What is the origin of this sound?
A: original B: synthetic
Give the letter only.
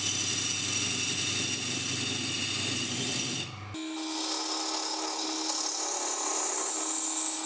A